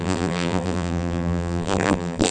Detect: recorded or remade remade